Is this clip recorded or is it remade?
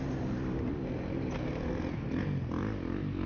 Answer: recorded